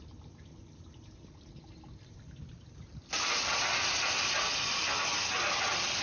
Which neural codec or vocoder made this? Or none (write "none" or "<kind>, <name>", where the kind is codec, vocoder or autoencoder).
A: none